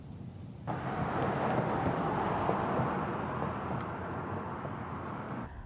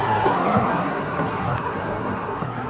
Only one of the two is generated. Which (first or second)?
second